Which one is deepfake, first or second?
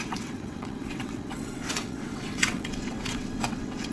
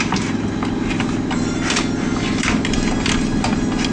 first